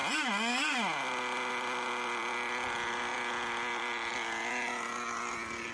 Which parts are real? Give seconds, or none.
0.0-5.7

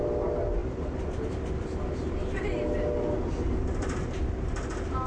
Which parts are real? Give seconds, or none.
0.0-5.1

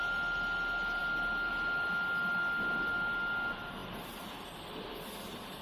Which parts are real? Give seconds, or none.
0.0-3.8